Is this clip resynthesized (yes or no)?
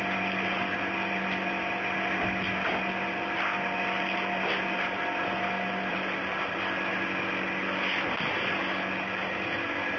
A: yes